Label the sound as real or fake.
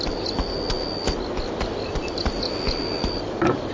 real